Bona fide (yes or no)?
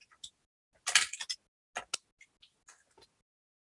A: yes